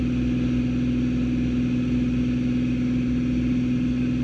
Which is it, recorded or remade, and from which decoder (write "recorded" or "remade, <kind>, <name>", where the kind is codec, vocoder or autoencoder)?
recorded